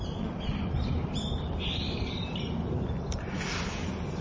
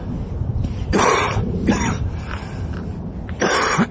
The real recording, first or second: first